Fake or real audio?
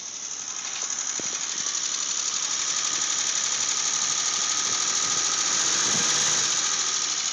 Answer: real